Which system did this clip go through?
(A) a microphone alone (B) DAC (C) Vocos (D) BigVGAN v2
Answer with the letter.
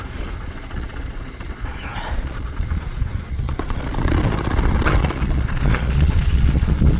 C